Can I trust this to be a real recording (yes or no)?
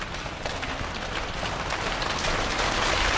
yes